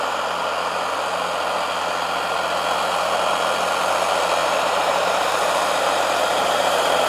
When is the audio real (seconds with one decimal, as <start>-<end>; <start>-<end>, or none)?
0.0-4.4

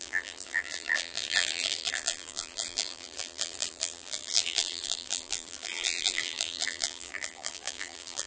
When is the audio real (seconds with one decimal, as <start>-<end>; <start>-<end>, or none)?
none

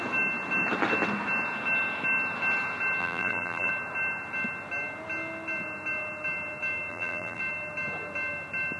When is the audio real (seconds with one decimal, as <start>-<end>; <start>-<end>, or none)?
0.0-3.0; 3.7-6.9; 7.4-8.8

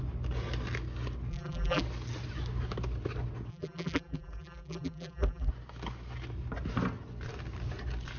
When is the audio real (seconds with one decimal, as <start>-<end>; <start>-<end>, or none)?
0.0-1.3; 1.8-3.5; 5.5-8.2

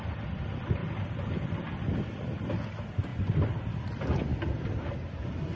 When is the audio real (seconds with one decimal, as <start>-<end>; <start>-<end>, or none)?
0.0-5.6

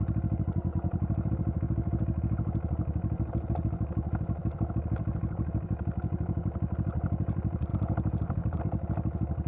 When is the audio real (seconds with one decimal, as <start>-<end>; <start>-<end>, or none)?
0.0-0.7; 1.3-7.7; 8.6-9.5